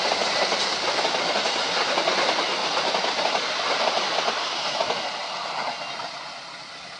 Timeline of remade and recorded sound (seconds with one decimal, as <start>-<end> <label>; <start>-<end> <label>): 0.0-7.0 recorded